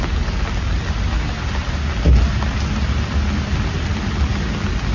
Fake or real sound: real